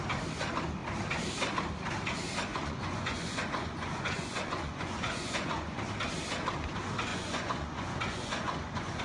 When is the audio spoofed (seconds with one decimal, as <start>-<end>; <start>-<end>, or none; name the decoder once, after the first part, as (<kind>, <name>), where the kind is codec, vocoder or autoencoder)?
2.5-5.8 (vocoder, Vocos); 7.1-9.0